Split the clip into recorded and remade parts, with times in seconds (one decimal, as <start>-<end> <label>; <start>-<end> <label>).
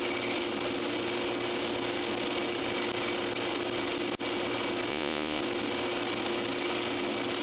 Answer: 0.0-4.9 recorded; 4.9-5.4 remade; 5.4-7.4 recorded